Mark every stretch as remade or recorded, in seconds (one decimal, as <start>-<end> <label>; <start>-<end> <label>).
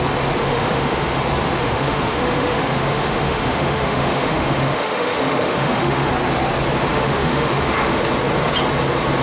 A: 0.0-0.4 recorded; 0.4-1.2 remade; 1.2-1.6 recorded; 1.6-6.1 remade; 6.1-6.9 recorded; 6.9-8.0 remade; 8.0-9.2 recorded